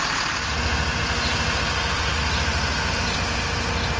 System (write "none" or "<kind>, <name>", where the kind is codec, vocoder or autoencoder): none